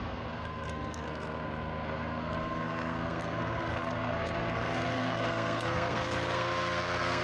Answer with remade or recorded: remade